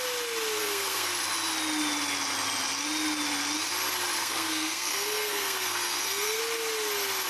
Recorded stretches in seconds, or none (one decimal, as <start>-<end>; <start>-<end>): 0.0-0.6; 1.1-4.2; 6.4-7.3